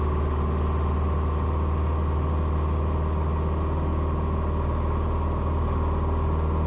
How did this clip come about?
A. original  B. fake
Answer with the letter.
A